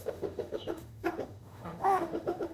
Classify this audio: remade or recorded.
remade